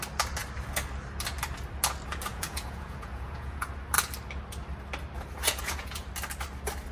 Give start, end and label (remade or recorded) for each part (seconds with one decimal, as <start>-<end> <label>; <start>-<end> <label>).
0.0-2.3 recorded; 2.3-3.7 remade; 3.7-5.4 recorded; 5.4-6.1 remade; 6.1-6.9 recorded